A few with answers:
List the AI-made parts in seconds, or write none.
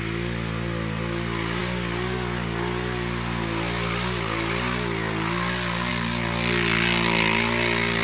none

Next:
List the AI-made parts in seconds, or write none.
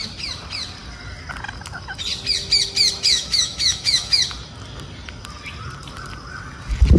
3.1-4.2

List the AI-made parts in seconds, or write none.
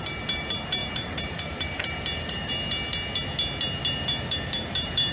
0.8-2.5; 3.8-5.1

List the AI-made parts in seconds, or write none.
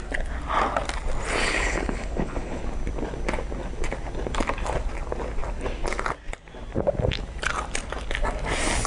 1.4-2.6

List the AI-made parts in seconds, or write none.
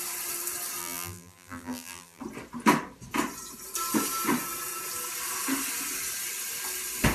0.8-2.2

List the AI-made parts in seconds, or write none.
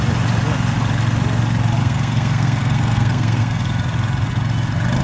1.8-3.6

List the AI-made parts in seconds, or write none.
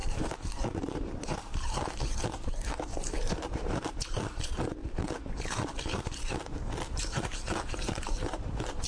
0.0-4.8; 8.0-8.9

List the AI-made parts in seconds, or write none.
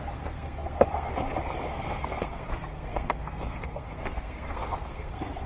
0.0-1.1; 1.7-5.5